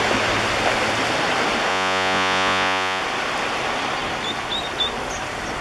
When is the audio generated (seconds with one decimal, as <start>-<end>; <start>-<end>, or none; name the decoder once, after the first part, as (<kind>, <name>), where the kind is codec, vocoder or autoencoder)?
1.7-3.0 (vocoder, Vocos)